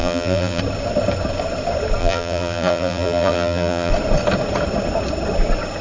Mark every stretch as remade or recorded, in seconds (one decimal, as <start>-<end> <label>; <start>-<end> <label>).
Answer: 0.0-0.6 remade; 0.6-2.0 recorded; 2.0-3.9 remade; 3.9-5.8 recorded